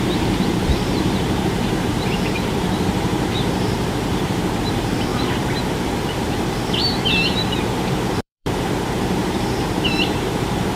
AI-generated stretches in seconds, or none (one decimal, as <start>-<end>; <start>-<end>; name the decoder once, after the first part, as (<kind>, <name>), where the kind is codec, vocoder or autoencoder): 0.0-10.8 (vocoder, BigVGAN v2)